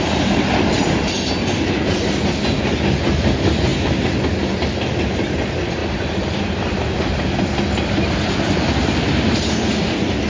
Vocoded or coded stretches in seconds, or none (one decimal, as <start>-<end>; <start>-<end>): 5.8-6.4

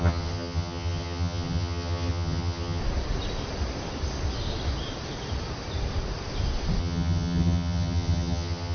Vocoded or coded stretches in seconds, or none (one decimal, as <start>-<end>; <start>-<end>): 0.0-2.8; 6.8-8.7

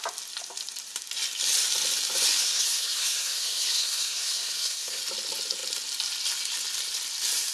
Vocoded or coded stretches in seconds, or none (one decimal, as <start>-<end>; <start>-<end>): 2.4-5.0

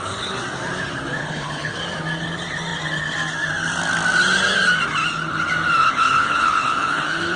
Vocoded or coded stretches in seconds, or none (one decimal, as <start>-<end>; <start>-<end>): 1.2-1.8; 5.8-7.4

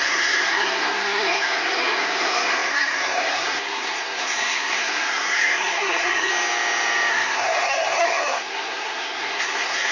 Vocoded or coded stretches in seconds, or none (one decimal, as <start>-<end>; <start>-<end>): 0.0-6.3; 7.1-9.9

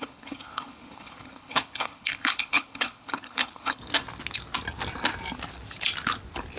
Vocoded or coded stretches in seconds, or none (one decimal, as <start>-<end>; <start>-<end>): 0.0-3.8

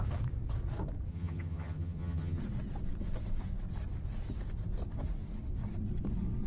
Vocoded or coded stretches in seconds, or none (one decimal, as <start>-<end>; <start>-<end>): 1.1-2.4

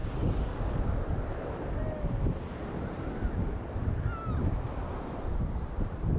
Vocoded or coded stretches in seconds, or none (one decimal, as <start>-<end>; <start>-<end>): 0.8-1.8; 5.5-6.2